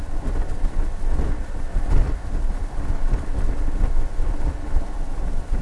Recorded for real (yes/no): yes